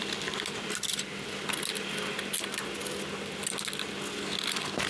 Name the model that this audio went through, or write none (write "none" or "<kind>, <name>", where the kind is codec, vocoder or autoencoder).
none